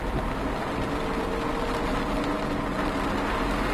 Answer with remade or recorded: recorded